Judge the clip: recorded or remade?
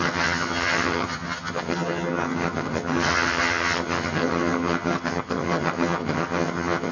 remade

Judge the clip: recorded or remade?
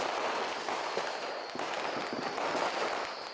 recorded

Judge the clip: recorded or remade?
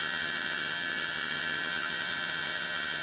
remade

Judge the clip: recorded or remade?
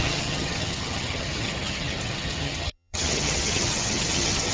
remade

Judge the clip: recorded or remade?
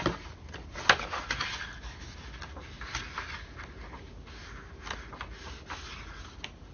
recorded